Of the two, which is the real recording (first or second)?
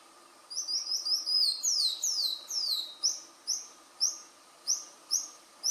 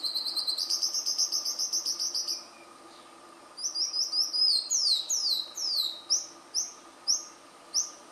second